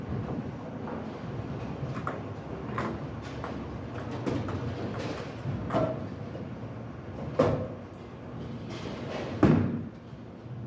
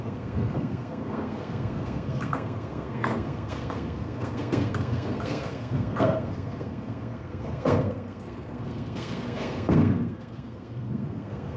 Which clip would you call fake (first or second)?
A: second